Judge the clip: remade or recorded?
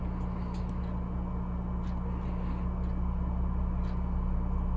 recorded